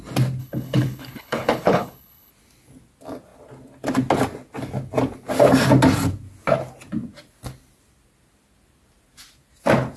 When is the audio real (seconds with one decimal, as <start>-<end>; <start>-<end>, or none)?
0.0-0.4; 2.3-10.0